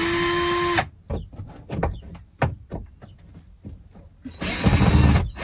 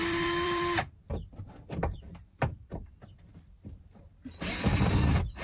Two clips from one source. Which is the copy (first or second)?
second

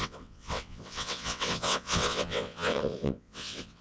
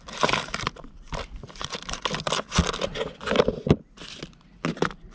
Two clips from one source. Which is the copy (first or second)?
first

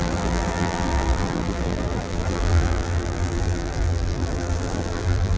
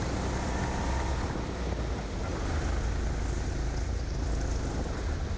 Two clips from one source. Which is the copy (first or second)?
first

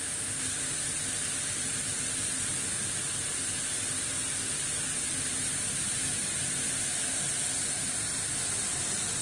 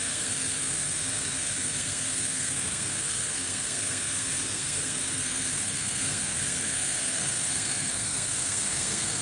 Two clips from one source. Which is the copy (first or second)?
second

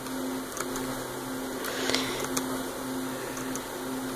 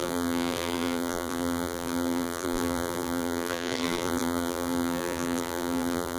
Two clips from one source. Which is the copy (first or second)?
second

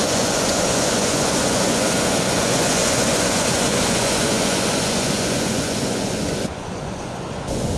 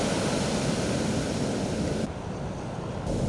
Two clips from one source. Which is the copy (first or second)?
first